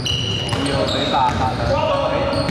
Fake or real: real